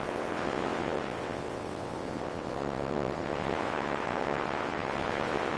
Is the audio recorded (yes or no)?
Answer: no